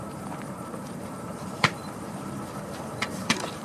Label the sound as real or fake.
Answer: fake